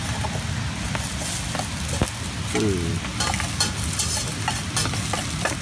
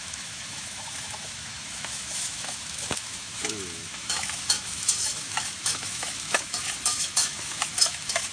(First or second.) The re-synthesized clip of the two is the second